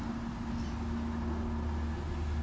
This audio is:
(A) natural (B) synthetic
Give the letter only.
A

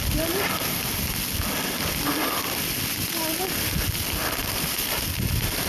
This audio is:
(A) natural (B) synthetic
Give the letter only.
A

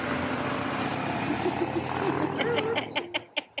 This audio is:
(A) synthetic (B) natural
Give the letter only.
B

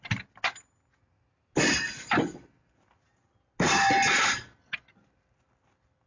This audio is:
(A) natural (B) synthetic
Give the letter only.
A